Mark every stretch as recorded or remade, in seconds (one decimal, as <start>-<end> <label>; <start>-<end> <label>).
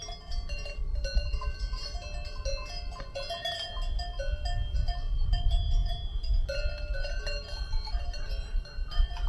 0.0-9.3 recorded